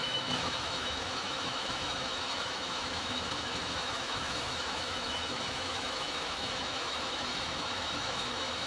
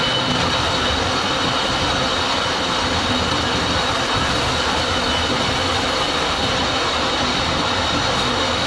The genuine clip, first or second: second